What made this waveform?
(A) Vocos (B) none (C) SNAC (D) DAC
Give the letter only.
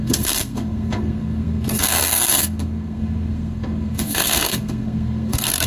C